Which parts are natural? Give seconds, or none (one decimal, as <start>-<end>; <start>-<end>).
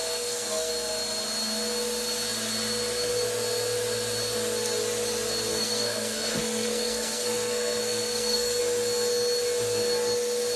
0.7-5.5; 8.6-10.6